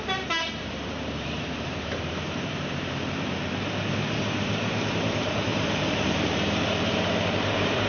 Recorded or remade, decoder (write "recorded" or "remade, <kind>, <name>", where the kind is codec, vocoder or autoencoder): remade, vocoder, BigVGAN v2